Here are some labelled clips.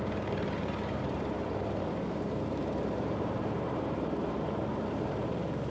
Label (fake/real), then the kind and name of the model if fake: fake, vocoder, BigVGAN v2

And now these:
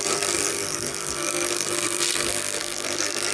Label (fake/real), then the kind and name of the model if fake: fake, codec, SNAC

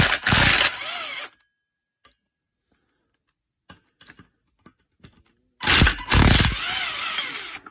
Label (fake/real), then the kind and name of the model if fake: real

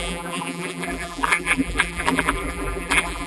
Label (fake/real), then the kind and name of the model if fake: fake, vocoder, BigVGAN v2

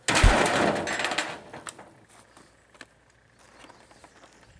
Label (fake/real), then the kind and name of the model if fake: real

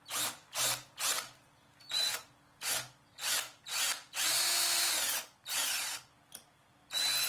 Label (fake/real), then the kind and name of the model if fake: real